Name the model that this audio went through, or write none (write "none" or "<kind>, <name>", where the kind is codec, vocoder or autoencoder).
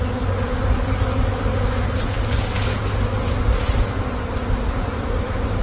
none